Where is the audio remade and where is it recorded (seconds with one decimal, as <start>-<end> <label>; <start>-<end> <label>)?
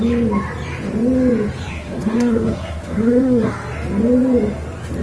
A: 0.0-1.7 recorded; 1.7-3.5 remade; 3.5-5.0 recorded